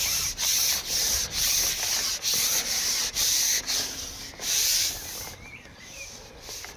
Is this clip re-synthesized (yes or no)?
no